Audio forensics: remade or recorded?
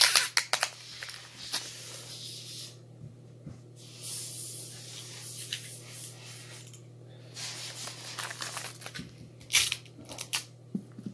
recorded